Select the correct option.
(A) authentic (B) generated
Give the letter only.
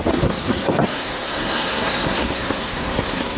B